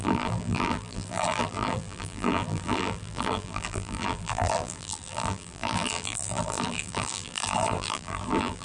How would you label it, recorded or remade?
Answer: remade